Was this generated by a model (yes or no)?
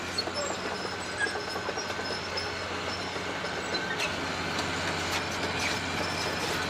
no